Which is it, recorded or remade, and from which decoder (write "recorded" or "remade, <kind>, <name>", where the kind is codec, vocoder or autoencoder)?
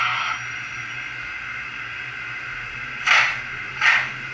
recorded